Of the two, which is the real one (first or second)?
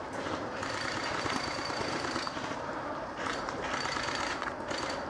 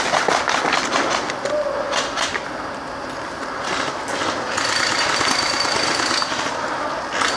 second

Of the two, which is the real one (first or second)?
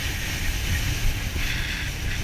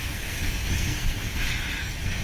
first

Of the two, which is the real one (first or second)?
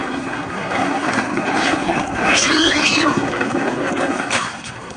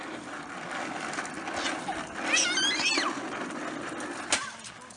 second